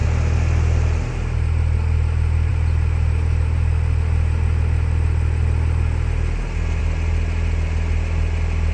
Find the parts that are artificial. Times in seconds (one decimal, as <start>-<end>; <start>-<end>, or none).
none

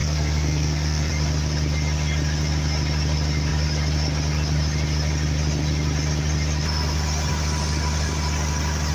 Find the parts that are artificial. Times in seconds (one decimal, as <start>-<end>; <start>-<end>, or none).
0.0-1.1

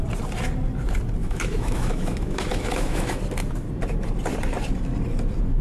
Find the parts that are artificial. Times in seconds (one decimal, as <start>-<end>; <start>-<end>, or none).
1.2-3.2

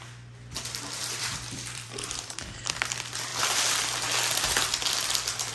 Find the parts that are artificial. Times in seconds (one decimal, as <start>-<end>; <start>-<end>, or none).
1.0-2.4

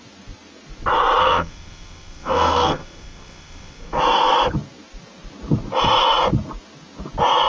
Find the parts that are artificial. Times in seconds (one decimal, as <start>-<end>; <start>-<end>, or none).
1.2-4.0

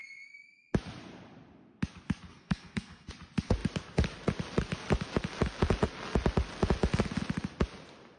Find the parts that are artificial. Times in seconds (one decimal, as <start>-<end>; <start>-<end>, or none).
2.3-3.1